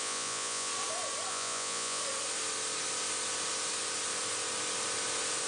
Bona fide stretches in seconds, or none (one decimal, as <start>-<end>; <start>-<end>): 0.7-1.3; 2.0-5.5